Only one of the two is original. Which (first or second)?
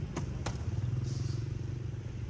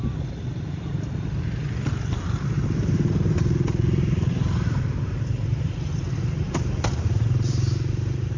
first